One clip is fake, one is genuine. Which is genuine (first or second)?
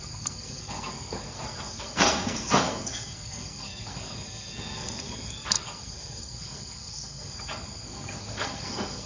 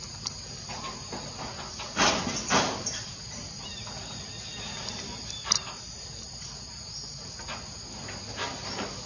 second